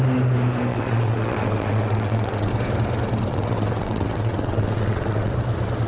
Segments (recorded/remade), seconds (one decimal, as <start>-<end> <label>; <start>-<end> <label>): 0.0-0.7 recorded; 0.7-2.5 remade; 2.5-3.3 recorded; 3.3-5.3 remade; 5.3-5.9 recorded